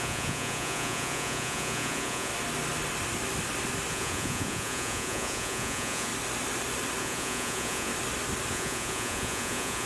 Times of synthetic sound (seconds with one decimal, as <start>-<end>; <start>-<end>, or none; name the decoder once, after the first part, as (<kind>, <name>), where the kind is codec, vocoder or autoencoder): 0.0-2.3 (vocoder, Vocos); 3.9-6.1; 7.0-7.9; 8.5-9.9